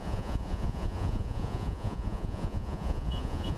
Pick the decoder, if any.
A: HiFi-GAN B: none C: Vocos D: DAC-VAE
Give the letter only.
C